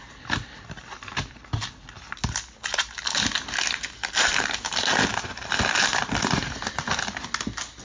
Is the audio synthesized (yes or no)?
no